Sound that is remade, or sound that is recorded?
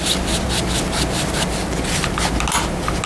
recorded